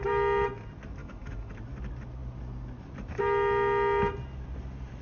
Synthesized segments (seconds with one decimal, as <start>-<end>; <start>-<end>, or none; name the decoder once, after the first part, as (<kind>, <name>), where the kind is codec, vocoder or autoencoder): 1.0-1.5 (autoencoder, DAC-VAE)